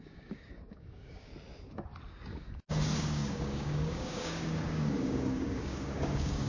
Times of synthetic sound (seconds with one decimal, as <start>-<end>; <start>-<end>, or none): 0.0-1.3; 2.1-6.5